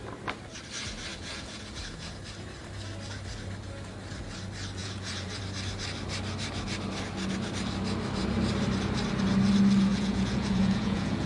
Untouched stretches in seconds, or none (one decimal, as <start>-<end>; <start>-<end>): 0.0-1.1; 2.1-4.8; 5.4-9.9